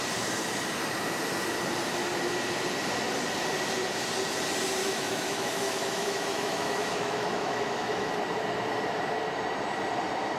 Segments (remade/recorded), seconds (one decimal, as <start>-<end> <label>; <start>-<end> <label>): 0.0-4.8 recorded; 4.8-8.1 remade; 8.1-10.4 recorded